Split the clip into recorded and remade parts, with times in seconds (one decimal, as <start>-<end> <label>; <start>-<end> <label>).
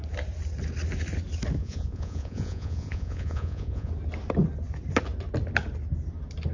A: 0.0-1.6 recorded; 1.6-3.9 remade; 3.9-6.5 recorded